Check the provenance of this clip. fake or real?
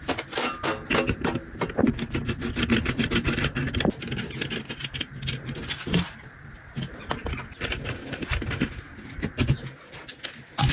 real